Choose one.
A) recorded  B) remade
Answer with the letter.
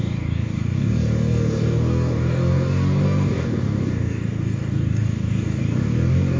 B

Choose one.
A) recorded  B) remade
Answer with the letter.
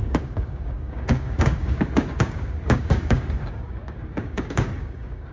B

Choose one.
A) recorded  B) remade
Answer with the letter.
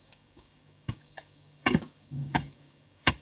B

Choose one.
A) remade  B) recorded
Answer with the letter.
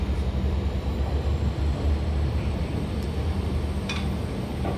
B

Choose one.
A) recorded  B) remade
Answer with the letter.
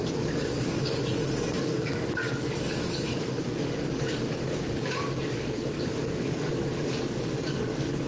B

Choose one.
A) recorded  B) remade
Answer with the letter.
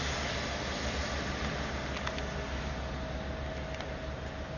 A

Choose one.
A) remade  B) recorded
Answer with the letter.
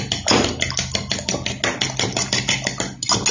B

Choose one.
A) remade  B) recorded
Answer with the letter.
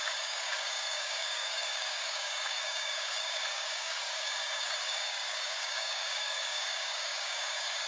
A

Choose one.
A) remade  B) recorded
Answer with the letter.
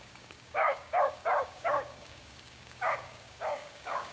A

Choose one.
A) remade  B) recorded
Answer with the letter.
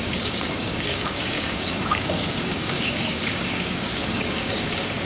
A